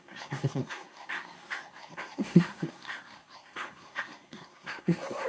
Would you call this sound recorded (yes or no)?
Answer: no